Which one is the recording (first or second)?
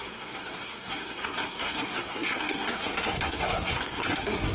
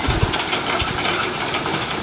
second